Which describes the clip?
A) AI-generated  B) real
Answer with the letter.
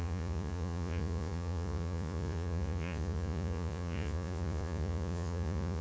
A